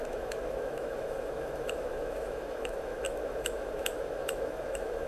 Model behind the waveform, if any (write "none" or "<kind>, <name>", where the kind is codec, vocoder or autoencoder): autoencoder, DAC-VAE